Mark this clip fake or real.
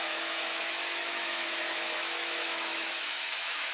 fake